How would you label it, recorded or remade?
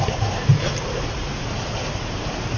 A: recorded